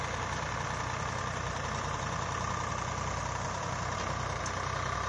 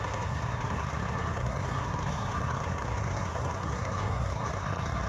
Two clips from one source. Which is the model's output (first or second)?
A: second